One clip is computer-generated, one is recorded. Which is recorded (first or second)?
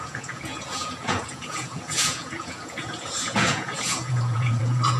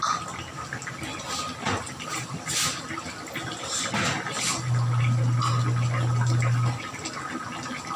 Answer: second